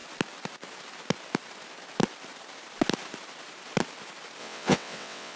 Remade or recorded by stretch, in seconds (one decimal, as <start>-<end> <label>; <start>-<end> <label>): 0.0-4.4 recorded; 4.4-5.4 remade